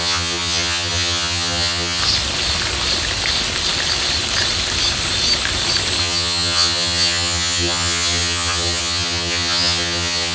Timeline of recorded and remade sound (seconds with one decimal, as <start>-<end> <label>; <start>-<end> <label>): 0.0-2.0 remade; 2.0-6.0 recorded; 6.0-10.3 remade